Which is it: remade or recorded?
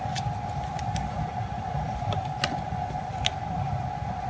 recorded